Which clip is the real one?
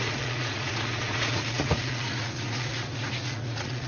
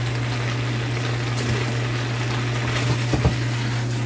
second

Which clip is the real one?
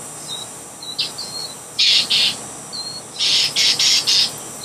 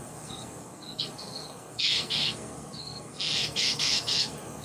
first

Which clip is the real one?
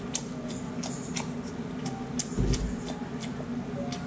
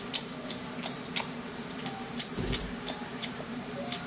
first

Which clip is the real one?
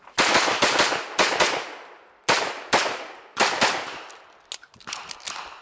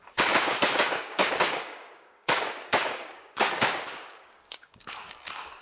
first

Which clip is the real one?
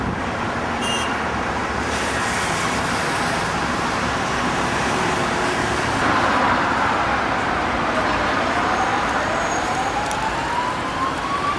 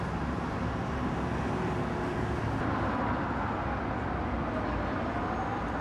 second